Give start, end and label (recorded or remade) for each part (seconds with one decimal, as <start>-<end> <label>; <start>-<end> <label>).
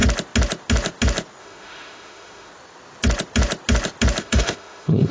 0.0-1.4 recorded; 1.4-2.5 remade; 2.5-4.2 recorded; 4.2-5.1 remade